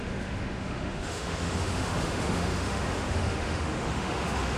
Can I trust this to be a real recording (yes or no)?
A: no